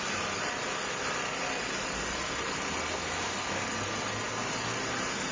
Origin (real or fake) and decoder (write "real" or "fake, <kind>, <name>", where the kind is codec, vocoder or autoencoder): real